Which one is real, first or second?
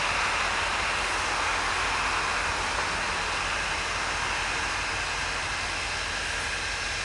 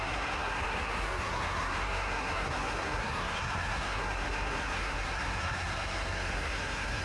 first